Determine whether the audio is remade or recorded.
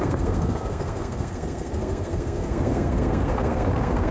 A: remade